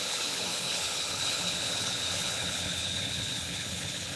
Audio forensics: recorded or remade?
remade